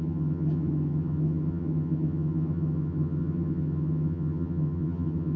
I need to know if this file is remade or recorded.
remade